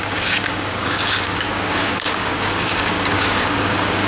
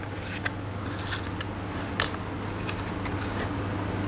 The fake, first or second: first